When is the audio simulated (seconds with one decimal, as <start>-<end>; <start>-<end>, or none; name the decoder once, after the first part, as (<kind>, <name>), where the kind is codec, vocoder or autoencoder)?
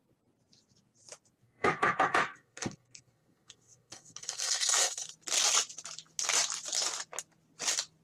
1.4-5.1 (codec, SNAC)